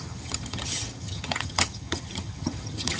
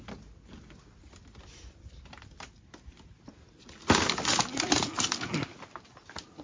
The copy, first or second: first